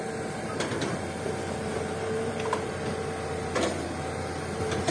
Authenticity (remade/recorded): remade